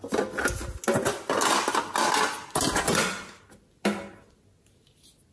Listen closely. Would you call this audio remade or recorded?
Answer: recorded